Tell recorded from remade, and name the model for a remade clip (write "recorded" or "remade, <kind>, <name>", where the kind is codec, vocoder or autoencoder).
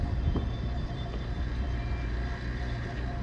remade, vocoder, BigVGAN v2